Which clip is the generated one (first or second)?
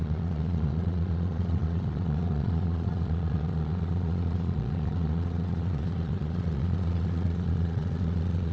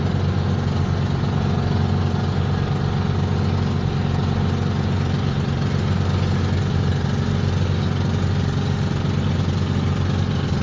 first